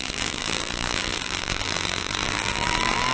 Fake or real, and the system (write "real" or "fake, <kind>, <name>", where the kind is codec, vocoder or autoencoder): fake, vocoder, BigVGAN v2